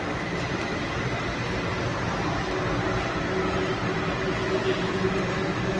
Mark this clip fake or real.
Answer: real